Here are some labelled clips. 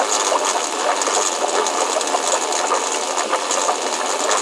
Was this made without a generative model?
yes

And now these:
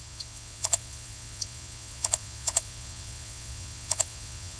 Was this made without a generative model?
no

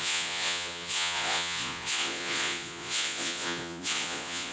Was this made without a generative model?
no